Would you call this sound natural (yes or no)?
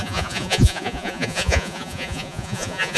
no